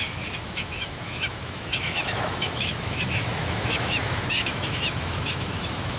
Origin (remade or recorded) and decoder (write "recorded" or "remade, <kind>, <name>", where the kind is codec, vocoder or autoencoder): remade, autoencoder, DAC-VAE